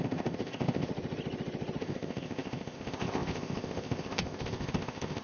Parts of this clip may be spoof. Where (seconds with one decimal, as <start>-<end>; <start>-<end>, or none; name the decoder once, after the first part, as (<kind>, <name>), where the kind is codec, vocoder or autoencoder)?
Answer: 0.0-0.9 (codec, ZipCodec); 1.8-5.2